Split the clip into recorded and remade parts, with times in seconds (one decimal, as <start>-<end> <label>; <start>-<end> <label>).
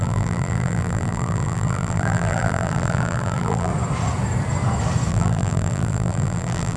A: 0.0-3.7 remade; 3.7-5.1 recorded; 5.1-6.8 remade